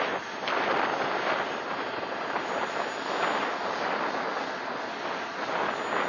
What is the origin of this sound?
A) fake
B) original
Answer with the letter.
B